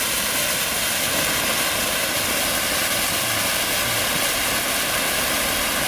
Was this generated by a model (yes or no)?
no